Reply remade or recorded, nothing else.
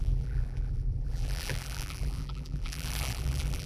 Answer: remade